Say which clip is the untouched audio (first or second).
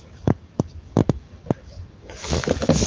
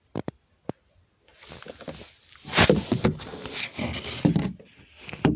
second